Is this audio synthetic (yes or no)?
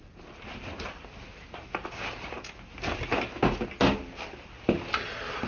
no